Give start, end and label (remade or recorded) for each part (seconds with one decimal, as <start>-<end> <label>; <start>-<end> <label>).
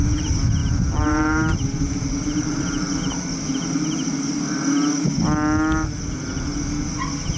0.0-0.6 recorded; 0.6-3.8 remade; 3.8-7.4 recorded